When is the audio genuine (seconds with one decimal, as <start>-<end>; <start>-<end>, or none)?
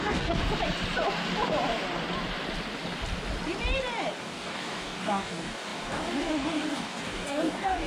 0.4-4.2